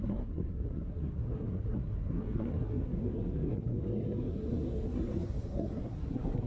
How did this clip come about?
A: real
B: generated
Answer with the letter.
B